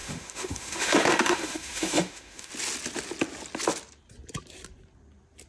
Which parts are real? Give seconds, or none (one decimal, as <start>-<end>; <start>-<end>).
2.5-5.5

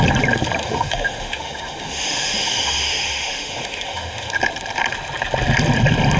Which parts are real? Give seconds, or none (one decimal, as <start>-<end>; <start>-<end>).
0.0-0.6; 4.3-6.2

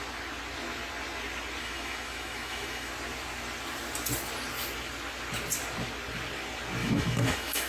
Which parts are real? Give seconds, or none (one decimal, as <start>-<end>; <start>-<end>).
0.0-1.6; 2.9-6.8

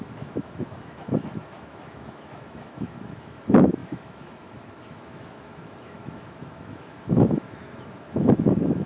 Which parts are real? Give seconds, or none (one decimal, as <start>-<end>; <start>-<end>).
none

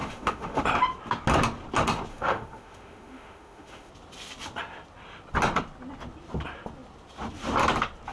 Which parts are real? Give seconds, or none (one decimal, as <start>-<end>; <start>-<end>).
0.6-2.1; 3.9-8.1

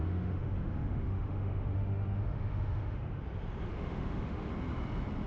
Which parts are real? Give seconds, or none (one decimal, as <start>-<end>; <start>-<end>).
3.2-3.7; 4.5-5.3

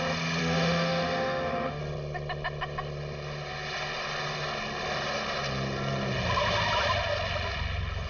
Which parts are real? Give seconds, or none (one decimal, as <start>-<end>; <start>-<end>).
0.0-0.4; 1.8-8.1

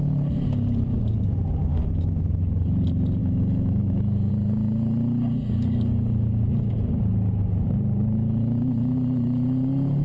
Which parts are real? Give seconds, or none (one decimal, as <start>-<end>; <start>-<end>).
0.0-1.6; 2.2-3.2; 4.3-10.0